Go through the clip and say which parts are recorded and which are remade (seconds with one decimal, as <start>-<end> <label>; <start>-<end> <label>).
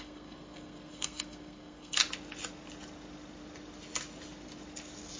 0.0-2.0 remade; 2.0-5.2 recorded